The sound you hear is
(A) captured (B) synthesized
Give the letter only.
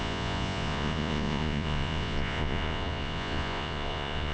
B